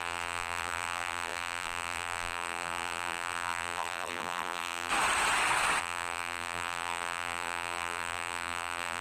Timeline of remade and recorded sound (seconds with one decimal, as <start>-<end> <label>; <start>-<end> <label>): 0.0-4.9 remade; 4.9-5.8 recorded; 5.8-9.0 remade